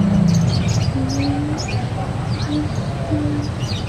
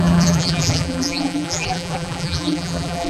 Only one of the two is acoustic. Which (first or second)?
first